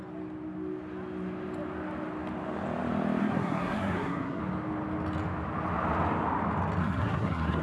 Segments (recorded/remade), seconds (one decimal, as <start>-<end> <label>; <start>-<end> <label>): 0.0-3.2 recorded; 3.2-4.4 remade; 4.4-6.8 recorded; 6.8-7.6 remade